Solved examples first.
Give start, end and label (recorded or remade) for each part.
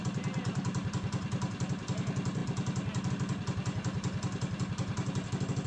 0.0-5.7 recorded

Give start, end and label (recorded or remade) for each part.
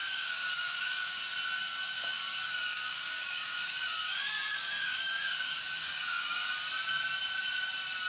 0.0-1.2 remade; 1.2-1.6 recorded; 1.6-6.5 remade; 6.5-8.1 recorded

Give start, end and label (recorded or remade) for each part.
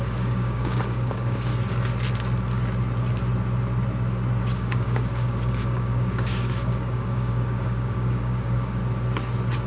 0.0-1.5 remade; 1.5-4.4 recorded; 4.4-8.8 remade; 8.8-9.7 recorded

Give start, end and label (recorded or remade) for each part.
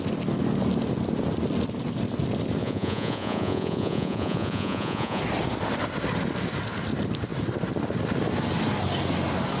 0.0-2.6 recorded; 2.6-5.2 remade; 5.2-9.6 recorded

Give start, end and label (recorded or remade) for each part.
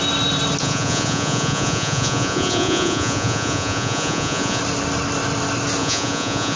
0.0-0.6 recorded; 0.6-4.6 remade; 4.6-5.8 recorded; 5.8-6.6 remade